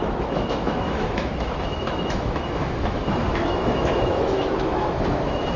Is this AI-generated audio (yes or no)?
yes